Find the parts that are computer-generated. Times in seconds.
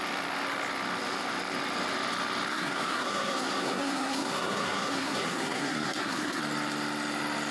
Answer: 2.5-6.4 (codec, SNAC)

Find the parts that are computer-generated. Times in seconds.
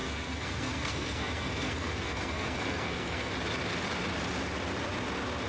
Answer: 0.0-3.3 (codec, SNAC)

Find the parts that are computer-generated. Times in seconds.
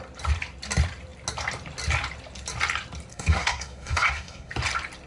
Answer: 3.1-4.5 (codec, SNAC)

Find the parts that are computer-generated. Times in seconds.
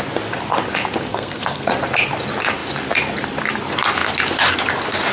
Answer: 1.1-1.7 (codec, SNAC)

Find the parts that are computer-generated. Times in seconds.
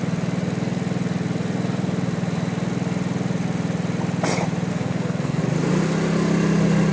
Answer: 4.7-5.4 (codec, SNAC)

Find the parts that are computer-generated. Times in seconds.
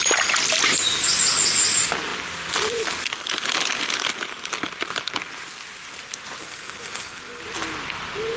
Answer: 6.4-7.4 (codec, SNAC)